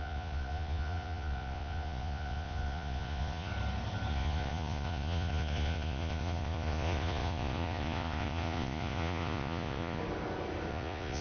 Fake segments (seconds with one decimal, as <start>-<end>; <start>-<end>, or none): 0.0-3.5; 4.1-10.0; 10.7-11.2